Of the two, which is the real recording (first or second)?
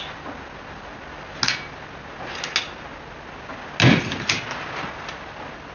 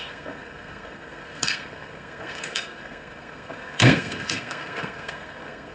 first